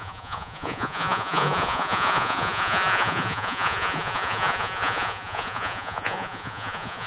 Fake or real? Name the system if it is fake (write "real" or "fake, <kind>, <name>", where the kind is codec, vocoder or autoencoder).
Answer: fake, vocoder, Vocos